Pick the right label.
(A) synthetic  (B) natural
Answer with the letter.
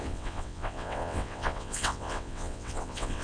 A